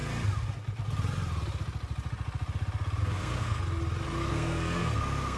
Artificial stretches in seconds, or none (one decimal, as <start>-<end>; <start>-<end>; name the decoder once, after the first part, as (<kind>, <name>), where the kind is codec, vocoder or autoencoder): 3.0-3.6 (codec, SNAC); 4.3-5.4